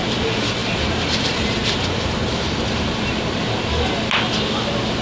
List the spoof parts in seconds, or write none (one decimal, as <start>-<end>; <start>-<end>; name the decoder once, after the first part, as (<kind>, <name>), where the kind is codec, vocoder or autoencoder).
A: 0.6-3.6 (vocoder, BigVGAN v2)